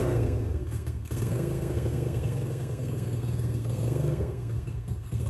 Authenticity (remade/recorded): remade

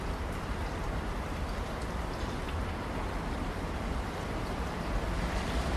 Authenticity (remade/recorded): remade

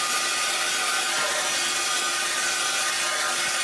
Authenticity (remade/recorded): recorded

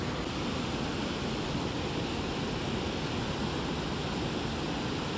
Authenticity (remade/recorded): recorded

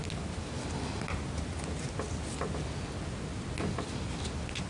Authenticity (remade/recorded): recorded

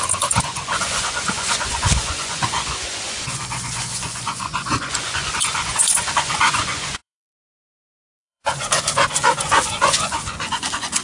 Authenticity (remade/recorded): remade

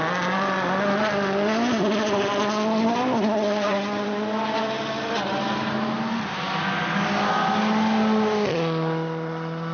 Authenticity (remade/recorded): recorded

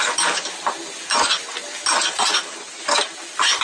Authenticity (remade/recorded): recorded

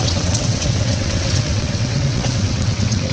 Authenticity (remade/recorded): remade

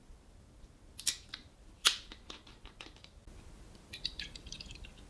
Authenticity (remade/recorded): recorded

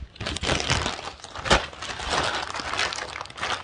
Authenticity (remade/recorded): recorded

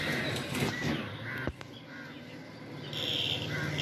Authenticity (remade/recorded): recorded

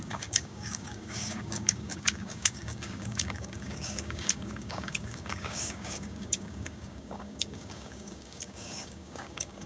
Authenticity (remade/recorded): remade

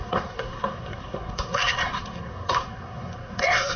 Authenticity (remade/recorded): remade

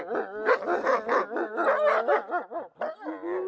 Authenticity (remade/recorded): recorded